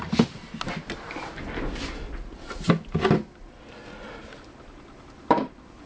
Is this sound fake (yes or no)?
no